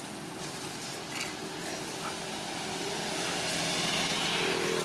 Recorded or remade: recorded